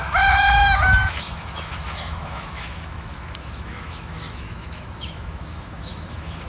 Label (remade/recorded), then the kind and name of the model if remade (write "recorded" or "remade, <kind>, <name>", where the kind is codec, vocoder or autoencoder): remade, autoencoder, DAC-VAE